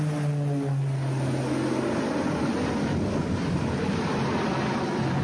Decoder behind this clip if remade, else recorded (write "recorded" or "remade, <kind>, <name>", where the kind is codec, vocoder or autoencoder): recorded